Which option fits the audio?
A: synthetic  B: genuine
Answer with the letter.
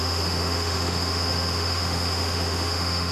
A